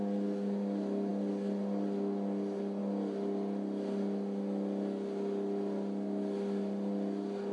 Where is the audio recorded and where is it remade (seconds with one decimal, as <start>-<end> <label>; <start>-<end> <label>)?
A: 0.0-7.5 recorded